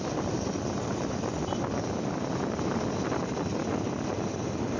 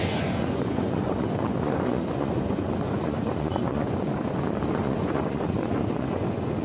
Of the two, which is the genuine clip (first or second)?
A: first